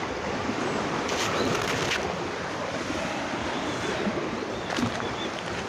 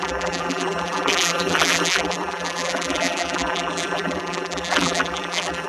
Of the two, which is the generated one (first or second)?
second